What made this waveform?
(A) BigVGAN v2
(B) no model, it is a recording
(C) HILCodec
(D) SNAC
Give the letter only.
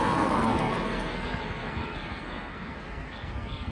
D